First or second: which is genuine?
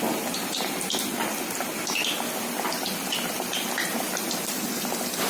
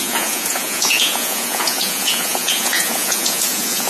first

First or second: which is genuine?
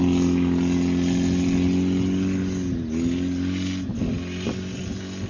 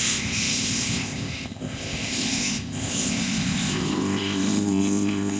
first